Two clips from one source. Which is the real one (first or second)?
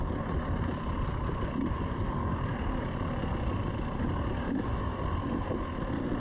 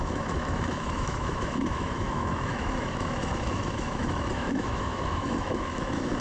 first